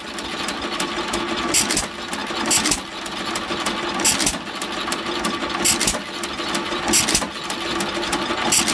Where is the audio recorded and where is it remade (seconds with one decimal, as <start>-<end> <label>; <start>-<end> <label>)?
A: 0.0-8.7 recorded